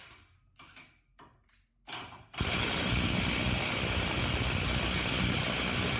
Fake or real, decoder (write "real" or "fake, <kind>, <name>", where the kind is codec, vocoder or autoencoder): real